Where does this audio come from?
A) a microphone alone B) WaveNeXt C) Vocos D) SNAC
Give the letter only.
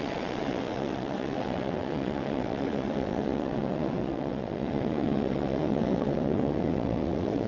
B